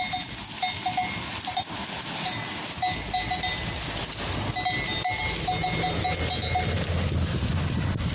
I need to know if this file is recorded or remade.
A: recorded